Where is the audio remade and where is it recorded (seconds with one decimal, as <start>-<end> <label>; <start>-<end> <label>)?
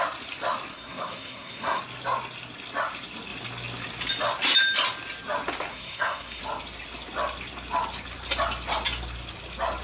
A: 0.0-0.7 recorded; 0.7-1.8 remade; 1.8-5.7 recorded; 5.7-6.4 remade; 6.4-9.8 recorded